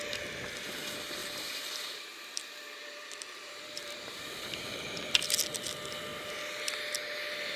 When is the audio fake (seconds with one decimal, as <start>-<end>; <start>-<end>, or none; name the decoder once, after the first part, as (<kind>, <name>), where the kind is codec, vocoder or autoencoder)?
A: 1.2-5.2 (vocoder, BigVGAN v2)